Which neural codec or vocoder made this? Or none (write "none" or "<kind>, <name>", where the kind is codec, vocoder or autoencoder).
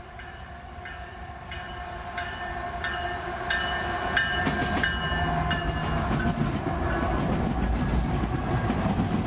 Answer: none